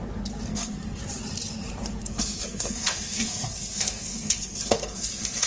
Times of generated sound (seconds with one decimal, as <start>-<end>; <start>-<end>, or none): 0.5-1.0; 2.0-5.5